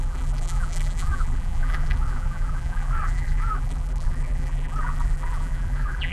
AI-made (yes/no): yes